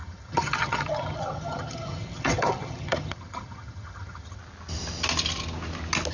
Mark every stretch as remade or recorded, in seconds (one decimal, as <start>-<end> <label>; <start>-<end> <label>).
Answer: 0.0-4.4 remade; 4.4-6.1 recorded